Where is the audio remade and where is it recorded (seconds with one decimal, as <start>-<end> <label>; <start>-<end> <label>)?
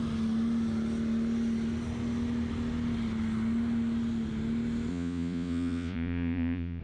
0.0-4.9 recorded; 4.9-6.8 remade